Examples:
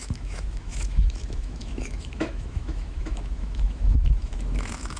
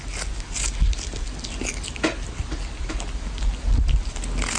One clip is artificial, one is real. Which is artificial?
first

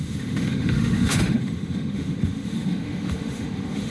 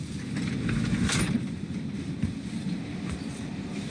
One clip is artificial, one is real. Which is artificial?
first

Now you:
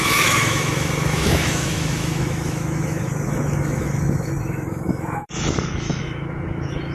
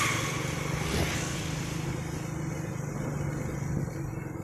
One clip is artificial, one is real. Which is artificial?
first